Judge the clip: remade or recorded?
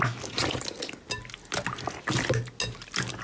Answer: recorded